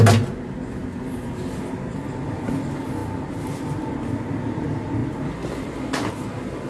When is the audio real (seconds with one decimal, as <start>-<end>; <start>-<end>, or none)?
0.0-6.7